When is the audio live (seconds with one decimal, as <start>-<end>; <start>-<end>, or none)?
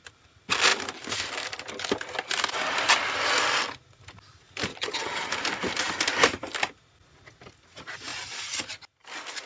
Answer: 0.0-4.7; 5.3-9.5